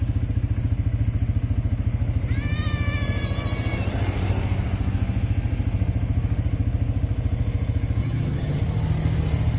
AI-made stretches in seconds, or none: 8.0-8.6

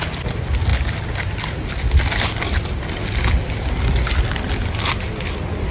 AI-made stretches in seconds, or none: none

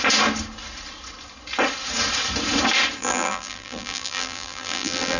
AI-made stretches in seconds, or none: 3.0-5.2

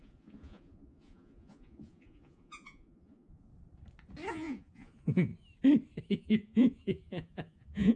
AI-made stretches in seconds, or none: 0.0-3.5; 4.3-5.3; 6.1-8.0

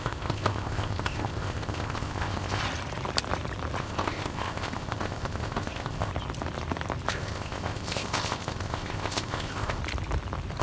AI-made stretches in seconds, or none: 0.0-2.6; 3.8-6.1; 7.1-9.8

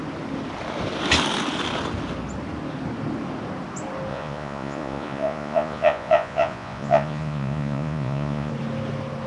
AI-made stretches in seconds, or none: 4.1-8.5

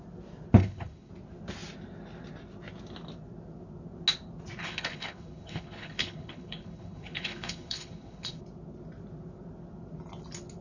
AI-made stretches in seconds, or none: 0.6-1.1; 4.6-8.4

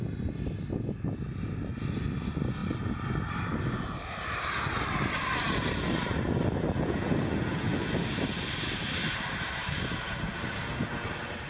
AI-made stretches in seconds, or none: 9.0-9.8